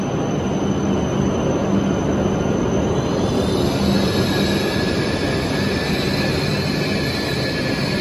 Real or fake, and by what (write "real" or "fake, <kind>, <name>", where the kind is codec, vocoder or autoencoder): real